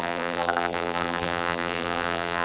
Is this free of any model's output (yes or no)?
no